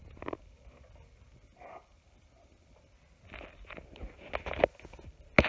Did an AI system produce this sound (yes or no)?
no